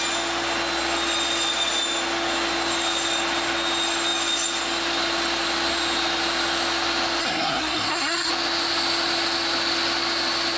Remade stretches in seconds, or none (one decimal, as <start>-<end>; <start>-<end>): 7.2-8.3